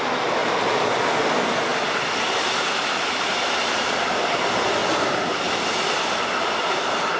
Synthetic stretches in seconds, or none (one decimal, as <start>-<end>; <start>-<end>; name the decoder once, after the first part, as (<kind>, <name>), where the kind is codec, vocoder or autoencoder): 0.4-0.9 (vocoder, BigVGAN v2); 1.7-4.0; 4.8-7.2